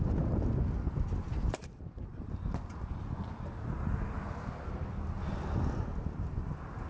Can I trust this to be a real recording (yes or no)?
yes